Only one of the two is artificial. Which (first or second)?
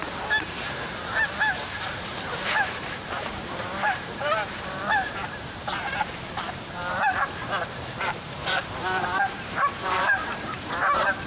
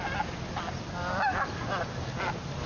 first